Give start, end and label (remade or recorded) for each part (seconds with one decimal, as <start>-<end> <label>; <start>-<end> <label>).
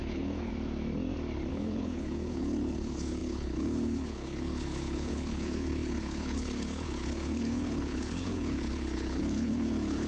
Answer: 0.0-0.5 remade; 0.5-1.5 recorded; 1.5-10.1 remade